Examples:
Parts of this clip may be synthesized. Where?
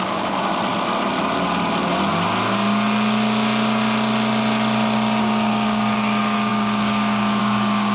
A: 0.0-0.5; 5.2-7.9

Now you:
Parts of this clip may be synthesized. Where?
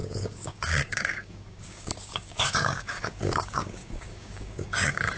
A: 0.0-5.2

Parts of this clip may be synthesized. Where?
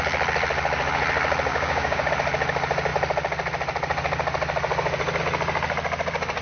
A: 1.5-2.1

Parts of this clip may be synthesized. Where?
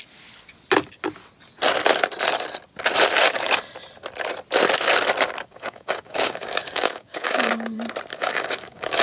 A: 5.5-7.5; 8.1-9.0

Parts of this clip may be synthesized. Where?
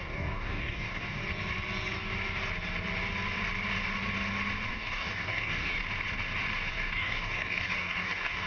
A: 0.0-1.2; 4.7-5.8; 6.7-8.5